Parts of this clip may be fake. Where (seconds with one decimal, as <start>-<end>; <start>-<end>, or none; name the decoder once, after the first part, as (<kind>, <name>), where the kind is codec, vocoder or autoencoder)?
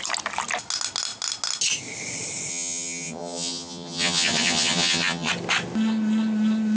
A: 2.5-5.3 (vocoder, HiFi-GAN)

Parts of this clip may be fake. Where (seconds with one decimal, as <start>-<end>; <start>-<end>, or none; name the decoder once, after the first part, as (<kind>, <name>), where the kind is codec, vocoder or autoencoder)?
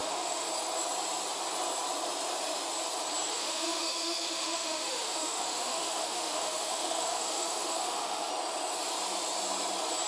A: 0.0-0.5 (autoencoder, DAC-VAE); 3.3-8.3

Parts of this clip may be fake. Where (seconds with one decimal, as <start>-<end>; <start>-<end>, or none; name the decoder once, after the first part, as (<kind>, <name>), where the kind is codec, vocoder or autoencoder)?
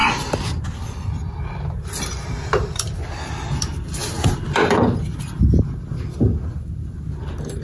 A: none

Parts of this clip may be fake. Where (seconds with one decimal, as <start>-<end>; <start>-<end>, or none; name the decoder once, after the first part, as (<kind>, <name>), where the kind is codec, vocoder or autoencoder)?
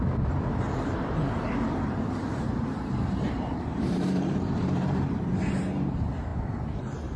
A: 0.0-7.2 (vocoder, BigVGAN v2)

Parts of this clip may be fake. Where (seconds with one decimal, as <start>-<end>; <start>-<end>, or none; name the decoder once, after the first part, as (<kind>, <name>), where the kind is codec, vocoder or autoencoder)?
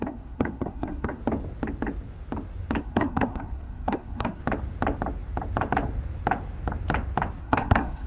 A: 0.0-1.2 (codec, SNAC); 2.8-4.4; 7.4-8.1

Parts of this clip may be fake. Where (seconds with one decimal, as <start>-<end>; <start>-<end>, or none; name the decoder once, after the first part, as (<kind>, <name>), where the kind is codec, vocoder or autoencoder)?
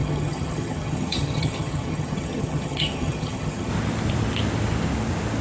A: 0.0-3.7 (vocoder, HiFi-GAN)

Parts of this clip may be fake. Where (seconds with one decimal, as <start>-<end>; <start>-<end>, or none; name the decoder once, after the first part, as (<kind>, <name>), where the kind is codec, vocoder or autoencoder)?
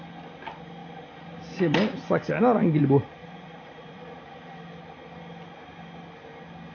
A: 3.2-4.0 (vocoder, Vocos)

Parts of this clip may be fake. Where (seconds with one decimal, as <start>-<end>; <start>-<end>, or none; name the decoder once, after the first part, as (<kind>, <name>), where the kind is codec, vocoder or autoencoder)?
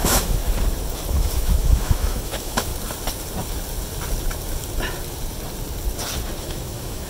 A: 0.0-0.4 (autoencoder, DAC-VAE); 1.1-2.7; 6.4-7.1